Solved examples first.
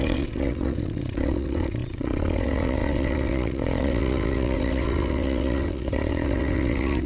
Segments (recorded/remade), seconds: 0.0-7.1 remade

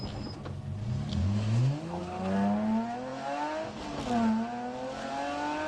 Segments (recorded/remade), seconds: 0.0-1.2 recorded; 1.2-2.0 remade; 2.0-5.7 recorded

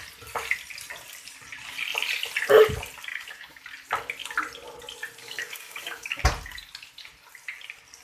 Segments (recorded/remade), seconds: 0.0-3.1 recorded; 3.1-3.6 remade; 3.6-5.2 recorded; 5.2-6.2 remade; 6.2-8.0 recorded

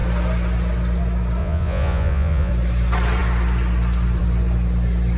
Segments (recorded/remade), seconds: 0.0-1.4 recorded; 1.4-2.5 remade; 2.5-5.2 recorded

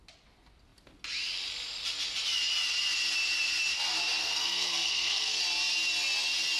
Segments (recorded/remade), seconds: 0.0-4.2 recorded; 4.2-5.4 remade; 5.4-6.6 recorded